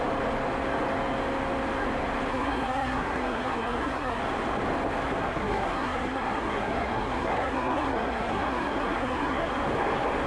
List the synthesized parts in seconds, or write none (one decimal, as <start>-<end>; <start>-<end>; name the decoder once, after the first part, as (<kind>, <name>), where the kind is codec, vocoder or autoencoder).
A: 2.3-4.2 (codec, SNAC); 5.2-9.5